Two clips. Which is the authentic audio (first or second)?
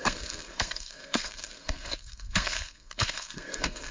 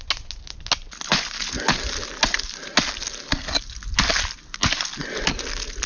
second